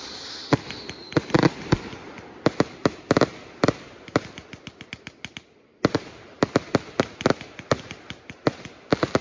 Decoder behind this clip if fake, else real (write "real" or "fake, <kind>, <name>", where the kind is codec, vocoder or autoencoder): real